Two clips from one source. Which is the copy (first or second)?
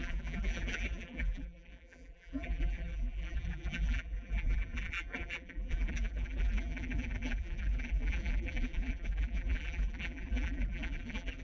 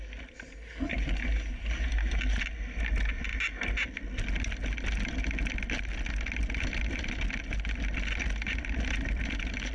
first